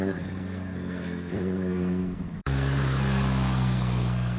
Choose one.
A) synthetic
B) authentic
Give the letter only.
A